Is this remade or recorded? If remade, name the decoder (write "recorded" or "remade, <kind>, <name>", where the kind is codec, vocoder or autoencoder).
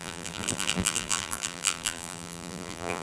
remade, vocoder, BigVGAN v2